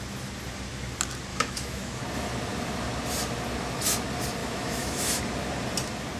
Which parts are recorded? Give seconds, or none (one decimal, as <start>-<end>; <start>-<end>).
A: 0.0-1.3; 2.0-4.4; 5.2-6.2